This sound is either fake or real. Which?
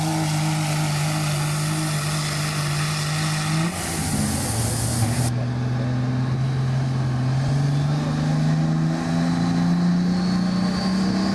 real